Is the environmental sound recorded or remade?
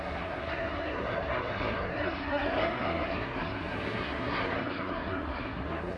remade